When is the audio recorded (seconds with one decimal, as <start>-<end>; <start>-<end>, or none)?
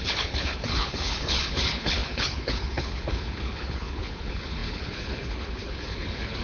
none